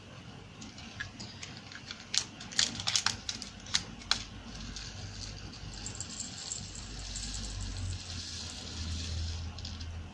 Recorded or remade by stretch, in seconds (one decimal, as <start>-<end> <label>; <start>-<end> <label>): 0.0-10.1 recorded